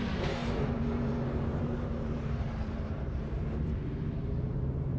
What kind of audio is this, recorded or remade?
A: remade